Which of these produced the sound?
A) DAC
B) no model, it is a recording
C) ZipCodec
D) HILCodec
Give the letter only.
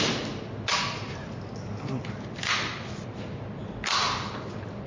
B